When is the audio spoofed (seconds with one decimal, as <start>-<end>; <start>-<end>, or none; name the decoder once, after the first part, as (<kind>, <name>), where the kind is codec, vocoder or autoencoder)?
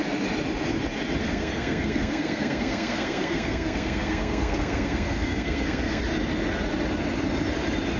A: 1.2-6.0 (codec, SNAC)